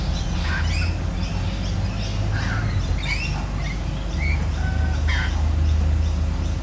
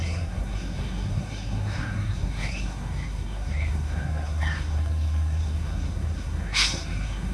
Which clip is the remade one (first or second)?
second